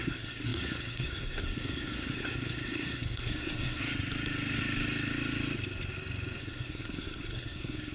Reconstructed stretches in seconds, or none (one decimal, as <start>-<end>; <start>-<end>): 0.0-3.8; 6.4-7.9